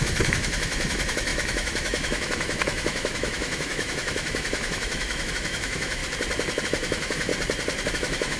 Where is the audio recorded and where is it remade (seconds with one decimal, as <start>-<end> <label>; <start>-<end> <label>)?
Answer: 0.0-6.0 remade; 6.0-6.6 recorded; 6.6-7.3 remade; 7.3-7.9 recorded; 7.9-8.4 remade